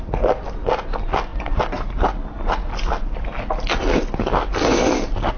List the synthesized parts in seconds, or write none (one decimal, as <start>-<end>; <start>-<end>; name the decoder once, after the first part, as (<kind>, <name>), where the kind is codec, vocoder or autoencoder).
none